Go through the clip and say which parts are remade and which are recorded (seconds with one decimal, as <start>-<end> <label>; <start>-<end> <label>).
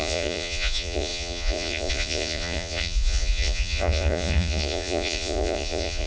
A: 0.0-6.1 remade